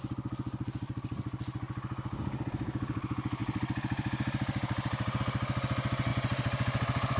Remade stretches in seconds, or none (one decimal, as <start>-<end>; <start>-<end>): 3.4-5.2; 6.1-7.2